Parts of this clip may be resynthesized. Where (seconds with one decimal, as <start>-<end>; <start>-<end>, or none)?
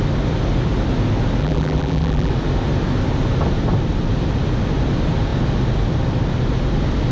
1.4-2.3